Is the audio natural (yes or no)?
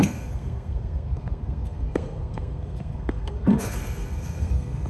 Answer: no